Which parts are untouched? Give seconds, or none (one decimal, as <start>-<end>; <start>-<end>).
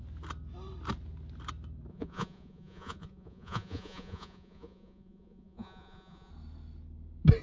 0.0-1.9; 6.3-7.4